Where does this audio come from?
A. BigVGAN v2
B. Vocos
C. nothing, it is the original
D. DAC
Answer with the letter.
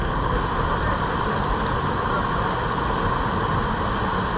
C